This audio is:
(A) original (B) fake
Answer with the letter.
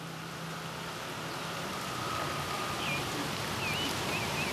A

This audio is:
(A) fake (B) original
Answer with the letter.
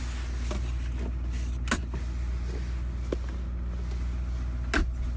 B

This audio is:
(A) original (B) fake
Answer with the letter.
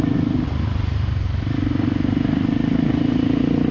A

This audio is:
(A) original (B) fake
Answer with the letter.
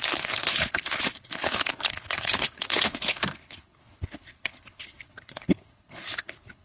B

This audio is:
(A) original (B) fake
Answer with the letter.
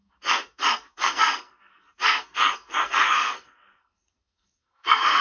B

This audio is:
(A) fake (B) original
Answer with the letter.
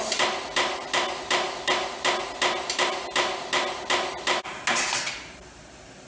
B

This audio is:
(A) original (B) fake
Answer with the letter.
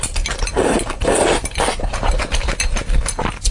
A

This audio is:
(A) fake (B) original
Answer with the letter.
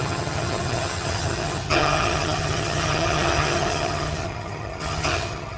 A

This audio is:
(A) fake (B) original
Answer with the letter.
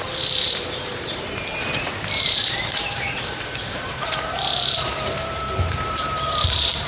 A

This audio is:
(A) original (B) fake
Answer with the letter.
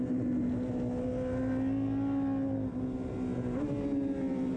A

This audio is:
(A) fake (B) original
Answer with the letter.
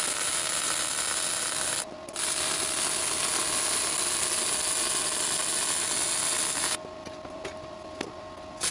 B